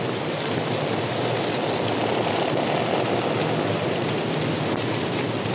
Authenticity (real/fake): real